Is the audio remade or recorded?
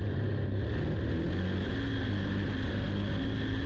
recorded